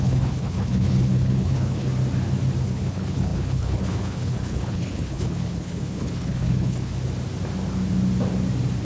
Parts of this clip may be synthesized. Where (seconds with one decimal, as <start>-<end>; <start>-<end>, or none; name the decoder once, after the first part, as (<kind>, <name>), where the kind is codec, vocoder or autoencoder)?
0.0-1.9 (codec, HILCodec); 2.6-6.9